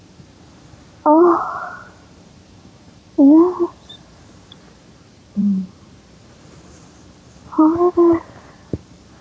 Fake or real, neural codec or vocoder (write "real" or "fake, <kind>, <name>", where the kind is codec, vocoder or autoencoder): fake, vocoder, BigVGAN v2